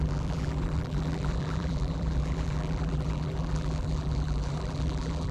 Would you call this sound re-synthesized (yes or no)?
yes